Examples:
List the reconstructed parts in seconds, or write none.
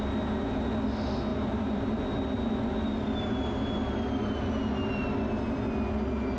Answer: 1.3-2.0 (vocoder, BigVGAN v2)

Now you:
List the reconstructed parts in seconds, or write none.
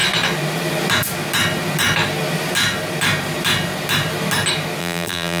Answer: 4.8-5.4 (vocoder, BigVGAN v2)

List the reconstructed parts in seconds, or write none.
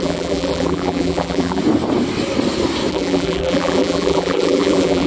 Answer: 0.0-1.6 (vocoder, BigVGAN v2); 2.9-5.1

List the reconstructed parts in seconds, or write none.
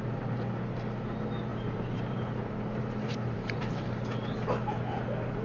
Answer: 1.5-3.6 (vocoder, BigVGAN v2)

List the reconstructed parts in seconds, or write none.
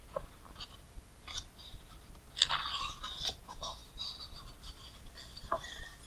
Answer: 3.8-4.5 (vocoder, BigVGAN v2)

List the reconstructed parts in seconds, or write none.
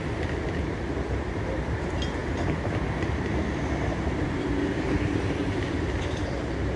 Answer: 0.0-6.8 (vocoder, BigVGAN v2)